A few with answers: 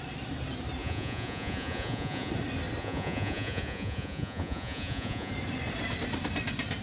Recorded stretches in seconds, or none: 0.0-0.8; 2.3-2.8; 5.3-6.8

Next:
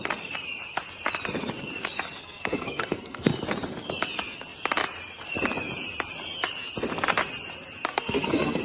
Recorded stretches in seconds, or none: 0.0-2.2; 3.3-7.9

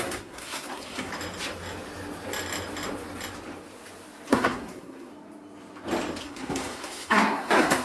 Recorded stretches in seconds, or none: 1.1-4.3; 5.1-6.2

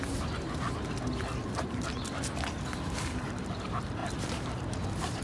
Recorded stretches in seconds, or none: 0.0-5.2